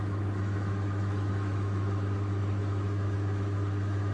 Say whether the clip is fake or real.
fake